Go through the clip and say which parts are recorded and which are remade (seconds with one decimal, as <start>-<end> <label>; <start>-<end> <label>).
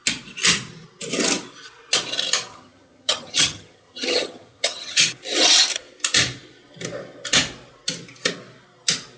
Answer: 0.0-2.5 recorded; 2.5-5.0 remade; 5.0-9.2 recorded